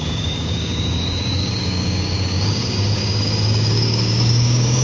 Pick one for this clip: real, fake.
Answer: fake